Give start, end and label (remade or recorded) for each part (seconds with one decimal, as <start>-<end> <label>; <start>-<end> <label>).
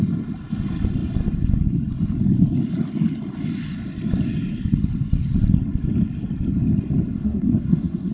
0.0-7.2 recorded; 7.2-8.1 remade